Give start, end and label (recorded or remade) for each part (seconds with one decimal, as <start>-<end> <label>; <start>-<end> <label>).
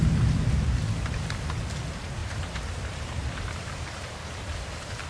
0.0-5.1 recorded